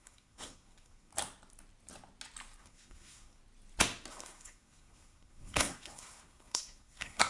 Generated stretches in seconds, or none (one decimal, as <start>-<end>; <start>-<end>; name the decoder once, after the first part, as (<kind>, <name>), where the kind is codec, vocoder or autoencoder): 0.0-1.1 (codec, SNAC); 2.6-3.4; 4.1-7.3